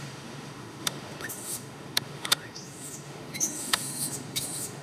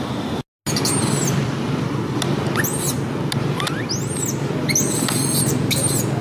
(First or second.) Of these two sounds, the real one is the second